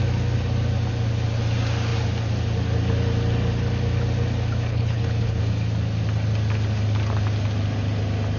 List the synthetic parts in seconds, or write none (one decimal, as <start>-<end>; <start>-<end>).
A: 4.7-5.4